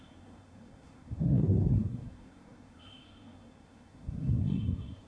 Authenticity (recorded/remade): remade